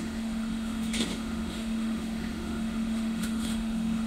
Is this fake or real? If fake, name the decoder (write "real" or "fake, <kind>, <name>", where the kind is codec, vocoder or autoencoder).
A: fake, autoencoder, DAC-VAE